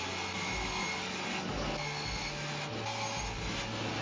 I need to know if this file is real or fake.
real